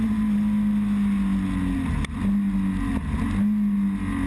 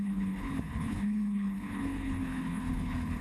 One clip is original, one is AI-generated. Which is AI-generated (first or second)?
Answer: second